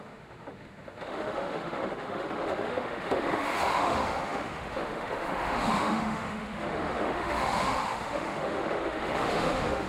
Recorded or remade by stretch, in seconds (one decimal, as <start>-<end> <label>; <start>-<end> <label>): 0.0-9.9 remade